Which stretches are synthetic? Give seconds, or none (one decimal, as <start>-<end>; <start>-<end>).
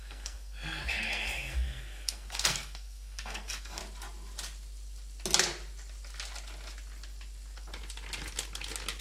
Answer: 0.0-3.8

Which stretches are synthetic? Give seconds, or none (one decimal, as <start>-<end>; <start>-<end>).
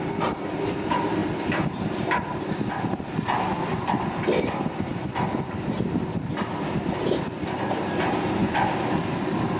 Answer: none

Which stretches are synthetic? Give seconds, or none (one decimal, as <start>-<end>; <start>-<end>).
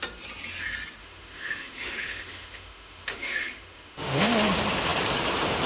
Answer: 1.0-4.3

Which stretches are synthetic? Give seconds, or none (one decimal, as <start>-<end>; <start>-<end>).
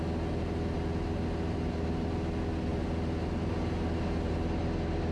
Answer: none